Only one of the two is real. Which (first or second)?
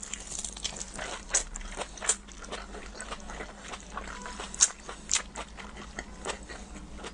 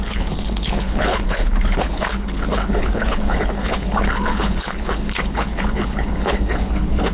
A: first